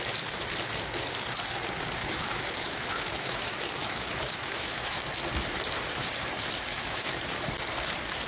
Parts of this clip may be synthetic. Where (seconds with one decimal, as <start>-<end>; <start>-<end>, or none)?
2.0-5.0; 6.7-7.2

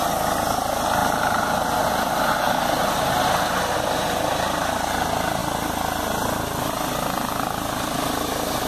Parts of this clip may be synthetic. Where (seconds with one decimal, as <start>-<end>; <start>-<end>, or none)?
none

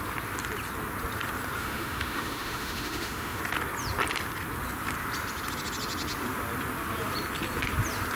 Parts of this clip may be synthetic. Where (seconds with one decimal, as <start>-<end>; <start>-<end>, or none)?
1.6-3.4

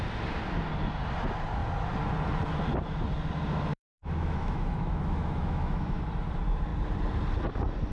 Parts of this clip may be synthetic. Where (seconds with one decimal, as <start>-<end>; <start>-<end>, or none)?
3.7-6.0